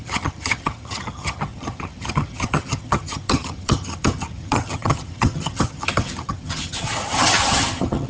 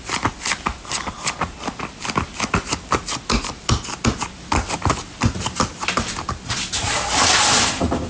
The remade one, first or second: first